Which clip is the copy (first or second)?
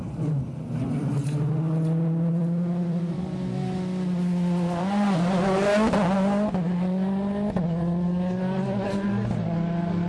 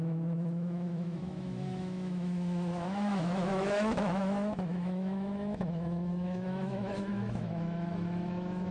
second